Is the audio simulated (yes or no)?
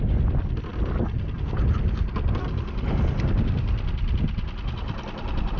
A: no